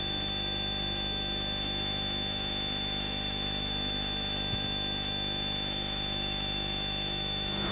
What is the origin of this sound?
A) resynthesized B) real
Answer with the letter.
A